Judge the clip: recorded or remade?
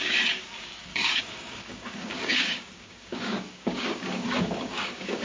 remade